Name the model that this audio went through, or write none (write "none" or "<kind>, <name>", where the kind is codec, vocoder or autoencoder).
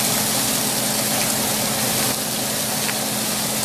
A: none